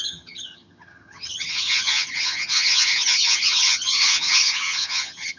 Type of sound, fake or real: fake